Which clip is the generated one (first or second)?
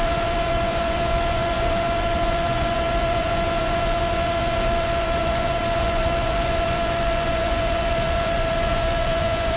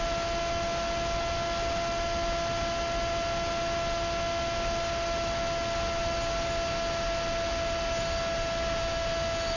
first